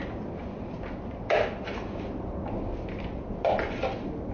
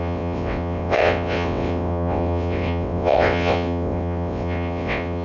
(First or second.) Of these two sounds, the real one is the first